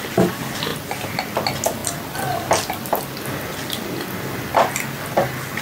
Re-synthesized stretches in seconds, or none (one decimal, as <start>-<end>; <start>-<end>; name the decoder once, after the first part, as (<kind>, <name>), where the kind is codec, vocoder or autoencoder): none